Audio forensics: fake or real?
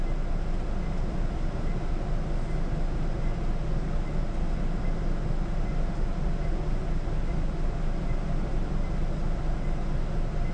real